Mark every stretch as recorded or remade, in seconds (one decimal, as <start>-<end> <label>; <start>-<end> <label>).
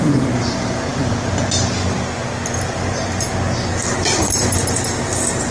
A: 0.0-5.5 recorded